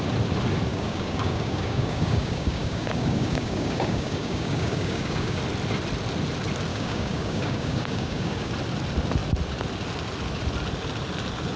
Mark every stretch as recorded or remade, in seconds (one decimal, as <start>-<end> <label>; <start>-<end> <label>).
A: 0.0-0.7 recorded; 0.7-5.4 remade; 5.4-6.7 recorded; 6.7-8.5 remade; 8.5-11.6 recorded